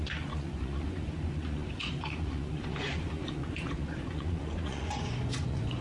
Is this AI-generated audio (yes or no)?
yes